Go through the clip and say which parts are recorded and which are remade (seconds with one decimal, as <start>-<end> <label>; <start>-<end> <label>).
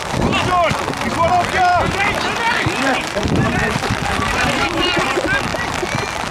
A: 0.0-1.7 recorded; 1.7-4.8 remade; 4.8-6.3 recorded